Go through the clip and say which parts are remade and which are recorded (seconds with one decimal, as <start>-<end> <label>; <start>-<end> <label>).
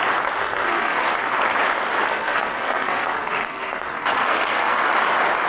0.0-0.4 recorded; 0.4-1.1 remade; 1.1-2.1 recorded; 2.1-4.9 remade; 4.9-5.5 recorded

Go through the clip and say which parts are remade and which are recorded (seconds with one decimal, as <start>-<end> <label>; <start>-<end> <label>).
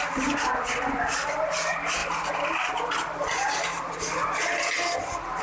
0.0-5.4 recorded